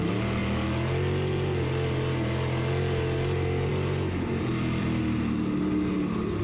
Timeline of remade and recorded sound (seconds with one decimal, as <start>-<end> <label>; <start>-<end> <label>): 0.0-6.4 recorded